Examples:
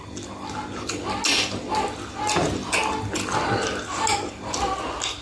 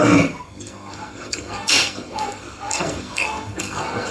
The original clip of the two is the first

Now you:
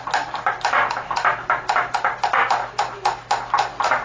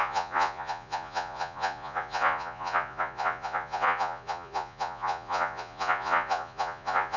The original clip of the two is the first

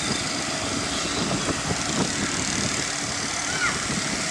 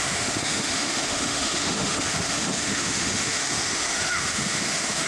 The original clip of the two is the first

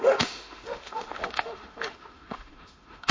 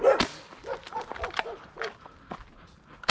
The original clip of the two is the second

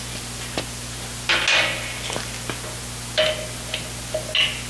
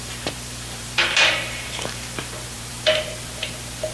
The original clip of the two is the first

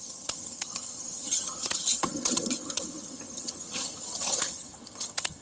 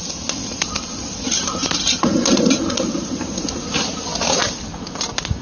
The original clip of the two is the second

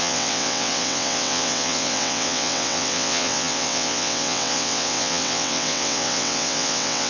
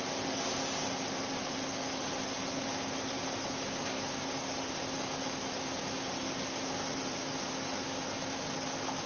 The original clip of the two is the second